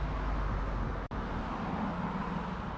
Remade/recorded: recorded